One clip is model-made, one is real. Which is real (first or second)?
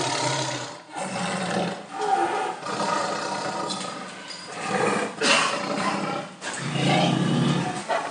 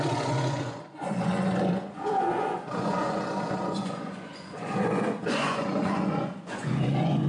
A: first